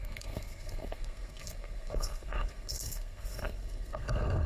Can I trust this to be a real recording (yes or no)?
no